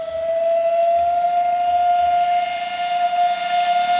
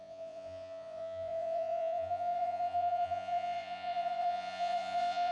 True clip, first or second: first